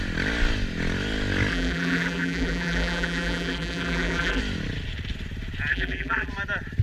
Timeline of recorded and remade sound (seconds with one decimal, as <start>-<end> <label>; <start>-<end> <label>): 0.0-1.5 recorded; 1.5-4.4 remade; 4.4-5.7 recorded; 5.7-6.3 remade; 6.3-6.8 recorded